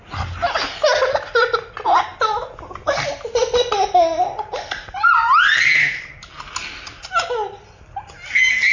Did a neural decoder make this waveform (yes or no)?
no